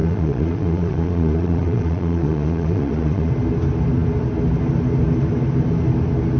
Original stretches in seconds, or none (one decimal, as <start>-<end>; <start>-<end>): 3.3-6.4